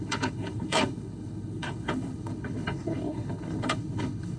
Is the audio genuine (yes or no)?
no